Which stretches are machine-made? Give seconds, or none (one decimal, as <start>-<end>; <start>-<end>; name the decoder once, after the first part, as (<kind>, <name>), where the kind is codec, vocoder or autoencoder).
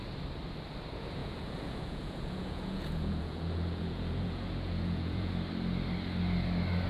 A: 1.2-5.3 (vocoder, Vocos)